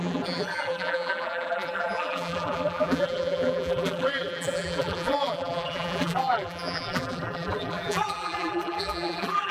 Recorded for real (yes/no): no